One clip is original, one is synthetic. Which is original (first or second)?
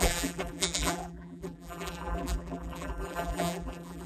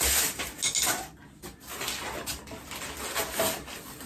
second